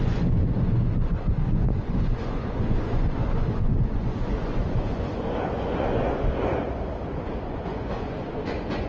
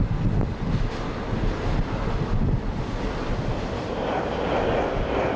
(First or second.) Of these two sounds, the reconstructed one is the first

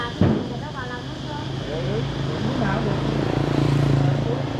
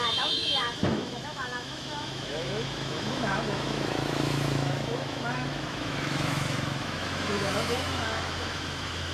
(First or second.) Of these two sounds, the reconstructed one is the second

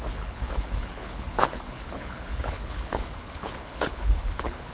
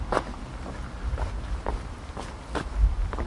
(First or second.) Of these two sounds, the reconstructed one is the first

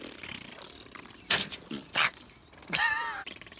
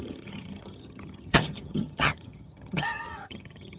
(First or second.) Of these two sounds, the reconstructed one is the second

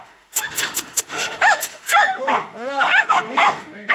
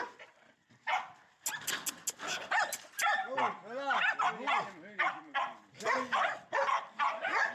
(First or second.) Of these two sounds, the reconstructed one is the first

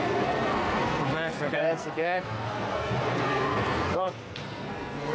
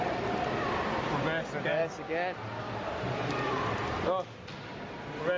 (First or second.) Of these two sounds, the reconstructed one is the first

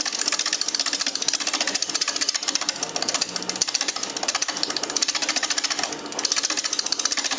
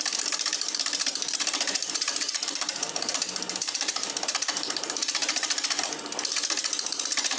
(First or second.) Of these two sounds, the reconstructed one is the second